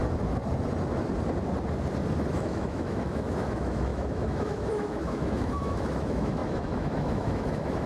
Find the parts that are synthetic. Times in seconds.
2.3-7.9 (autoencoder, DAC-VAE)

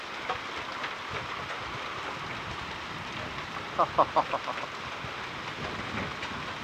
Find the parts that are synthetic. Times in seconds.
0.7-4.7 (vocoder, BigVGAN v2)

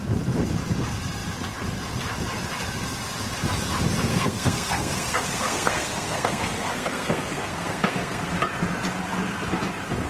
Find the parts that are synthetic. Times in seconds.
4.1-8.3 (codec, SNAC)